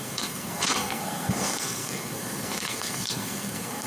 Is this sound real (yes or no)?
no